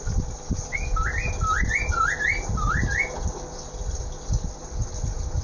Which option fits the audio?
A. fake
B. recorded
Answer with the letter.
B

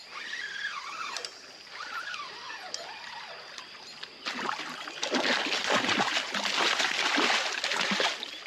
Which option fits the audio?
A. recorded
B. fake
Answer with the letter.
A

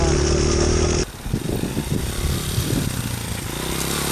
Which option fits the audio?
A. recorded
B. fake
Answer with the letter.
A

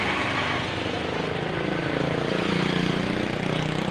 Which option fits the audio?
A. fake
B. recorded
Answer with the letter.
B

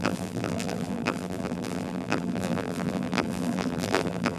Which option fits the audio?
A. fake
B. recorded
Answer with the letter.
A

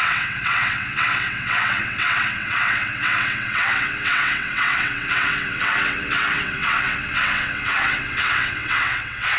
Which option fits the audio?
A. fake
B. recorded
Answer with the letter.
A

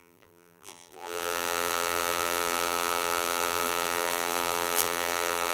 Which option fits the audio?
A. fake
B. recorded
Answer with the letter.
A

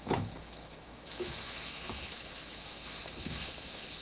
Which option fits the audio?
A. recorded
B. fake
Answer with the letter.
B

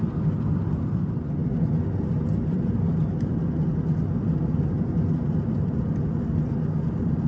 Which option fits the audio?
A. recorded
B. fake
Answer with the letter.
A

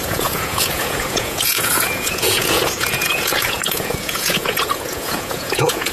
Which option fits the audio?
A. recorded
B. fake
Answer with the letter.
B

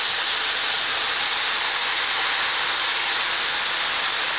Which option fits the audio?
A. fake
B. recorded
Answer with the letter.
B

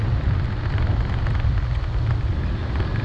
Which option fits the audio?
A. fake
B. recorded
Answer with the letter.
B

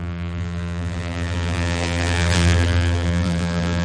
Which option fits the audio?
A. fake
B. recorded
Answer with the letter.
A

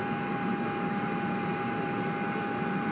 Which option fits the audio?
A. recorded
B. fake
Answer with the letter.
A